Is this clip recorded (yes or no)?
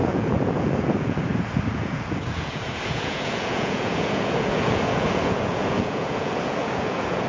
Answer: no